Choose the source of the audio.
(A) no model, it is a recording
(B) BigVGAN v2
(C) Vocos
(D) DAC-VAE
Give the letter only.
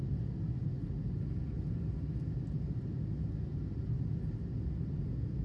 A